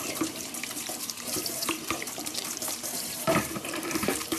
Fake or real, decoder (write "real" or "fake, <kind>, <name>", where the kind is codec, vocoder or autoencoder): fake, vocoder, BigVGAN v2